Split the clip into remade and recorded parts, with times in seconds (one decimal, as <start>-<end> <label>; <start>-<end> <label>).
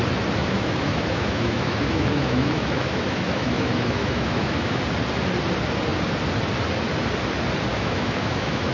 0.0-0.4 recorded; 0.4-4.8 remade; 4.8-7.7 recorded; 7.7-8.7 remade